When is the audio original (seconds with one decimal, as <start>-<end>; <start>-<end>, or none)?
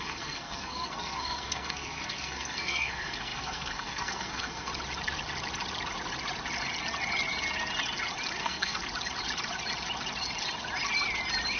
4.7-8.4; 8.8-11.6